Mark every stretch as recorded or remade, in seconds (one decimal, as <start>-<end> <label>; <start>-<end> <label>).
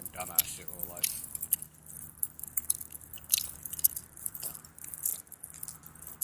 0.0-5.1 remade; 5.1-5.8 recorded; 5.8-6.2 remade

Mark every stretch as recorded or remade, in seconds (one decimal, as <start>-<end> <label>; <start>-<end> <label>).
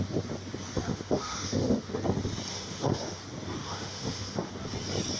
0.0-0.9 recorded; 0.9-1.9 remade; 1.9-2.5 recorded; 2.5-3.2 remade; 3.2-3.6 recorded; 3.6-4.5 remade; 4.5-5.2 recorded